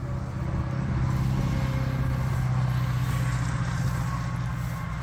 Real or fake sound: real